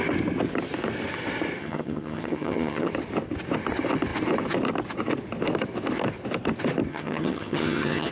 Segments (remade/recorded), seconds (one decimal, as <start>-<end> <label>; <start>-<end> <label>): 0.0-1.6 recorded; 1.6-2.9 remade; 2.9-6.9 recorded; 6.9-8.1 remade